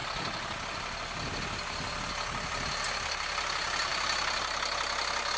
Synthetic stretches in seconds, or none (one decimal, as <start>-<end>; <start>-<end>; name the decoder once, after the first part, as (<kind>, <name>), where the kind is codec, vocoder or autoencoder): none

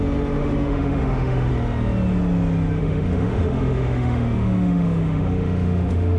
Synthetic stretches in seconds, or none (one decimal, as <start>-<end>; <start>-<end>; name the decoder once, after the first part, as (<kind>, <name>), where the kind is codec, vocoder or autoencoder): 0.4-1.5 (autoencoder, DAC-VAE); 2.8-6.2

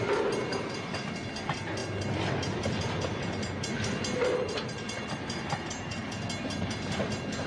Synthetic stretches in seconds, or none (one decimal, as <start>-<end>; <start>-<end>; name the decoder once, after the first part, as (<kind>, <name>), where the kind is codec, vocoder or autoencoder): 4.3-6.2 (vocoder, BigVGAN v2)

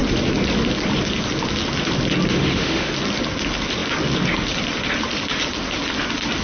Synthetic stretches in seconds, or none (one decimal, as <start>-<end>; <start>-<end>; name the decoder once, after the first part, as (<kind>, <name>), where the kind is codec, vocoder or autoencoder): 2.3-2.9 (autoencoder, DAC-VAE)

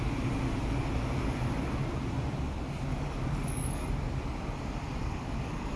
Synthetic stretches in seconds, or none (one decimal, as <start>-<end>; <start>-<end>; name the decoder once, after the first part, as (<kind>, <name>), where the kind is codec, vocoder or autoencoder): 2.9-3.9 (codec, DAC); 5.0-5.8

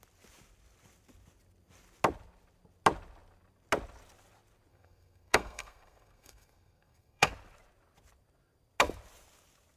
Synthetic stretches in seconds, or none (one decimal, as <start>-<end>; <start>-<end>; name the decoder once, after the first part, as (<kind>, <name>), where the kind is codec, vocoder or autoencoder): 4.7-7.3 (codec, SNAC)

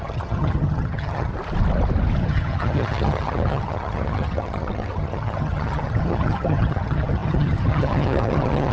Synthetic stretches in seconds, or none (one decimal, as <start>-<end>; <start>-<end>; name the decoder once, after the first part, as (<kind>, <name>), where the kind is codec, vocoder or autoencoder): 0.0-1.3 (vocoder, HiFi-GAN); 2.2-8.7

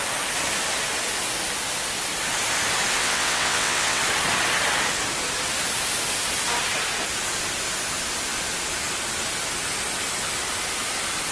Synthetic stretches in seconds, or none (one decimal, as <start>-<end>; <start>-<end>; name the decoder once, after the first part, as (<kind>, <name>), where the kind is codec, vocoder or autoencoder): 3.0-4.0 (vocoder, WaveNeXt)